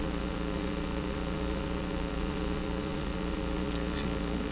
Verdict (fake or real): fake